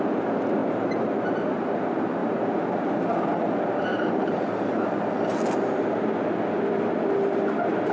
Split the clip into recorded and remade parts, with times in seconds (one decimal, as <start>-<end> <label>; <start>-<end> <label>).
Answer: 0.0-0.6 recorded; 0.6-1.3 remade; 1.3-3.9 recorded; 3.9-5.4 remade; 5.4-7.9 recorded